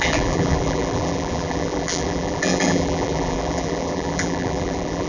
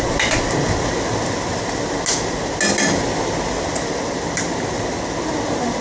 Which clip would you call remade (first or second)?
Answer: first